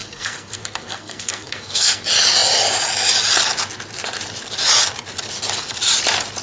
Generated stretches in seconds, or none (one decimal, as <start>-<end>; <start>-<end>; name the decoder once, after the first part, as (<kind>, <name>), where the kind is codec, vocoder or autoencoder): 0.0-2.0 (codec, SNAC)